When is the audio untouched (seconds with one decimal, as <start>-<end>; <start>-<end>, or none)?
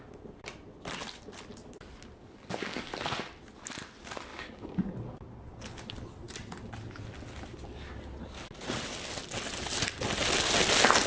0.0-2.2; 2.9-4.3; 4.9-11.1